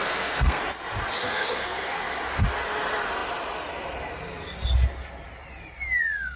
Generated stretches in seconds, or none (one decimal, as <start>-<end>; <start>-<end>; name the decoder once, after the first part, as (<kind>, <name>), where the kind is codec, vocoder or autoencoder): 0.0-0.6 (codec, SNAC); 1.2-2.2